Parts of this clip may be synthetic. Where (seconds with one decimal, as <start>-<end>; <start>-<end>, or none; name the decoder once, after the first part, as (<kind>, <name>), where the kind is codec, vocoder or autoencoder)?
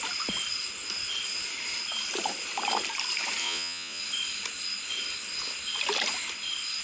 3.4-4.0 (vocoder, Vocos)